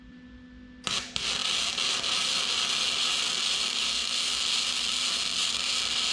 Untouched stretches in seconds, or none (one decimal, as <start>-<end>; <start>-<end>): 0.0-6.1